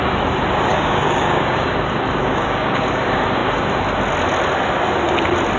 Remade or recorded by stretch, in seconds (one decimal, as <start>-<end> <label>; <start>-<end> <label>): 0.0-0.7 recorded; 0.7-1.7 remade; 1.7-2.2 recorded; 2.2-2.8 remade; 2.8-5.6 recorded